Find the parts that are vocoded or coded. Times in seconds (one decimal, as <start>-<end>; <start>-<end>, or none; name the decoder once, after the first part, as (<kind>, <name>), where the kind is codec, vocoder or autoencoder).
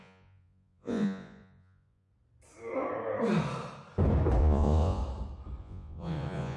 0.0-2.1 (vocoder, Vocos); 4.4-5.0; 5.6-6.6